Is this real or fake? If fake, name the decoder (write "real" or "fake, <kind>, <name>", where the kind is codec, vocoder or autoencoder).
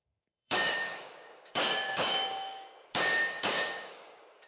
fake, codec, DAC